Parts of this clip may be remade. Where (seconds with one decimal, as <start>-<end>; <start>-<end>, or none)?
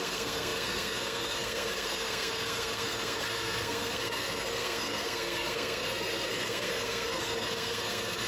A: 0.0-8.3